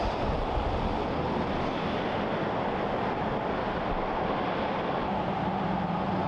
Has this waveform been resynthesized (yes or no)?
no